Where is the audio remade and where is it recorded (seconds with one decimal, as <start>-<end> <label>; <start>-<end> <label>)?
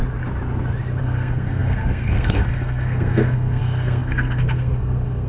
0.0-1.0 recorded; 1.0-5.3 remade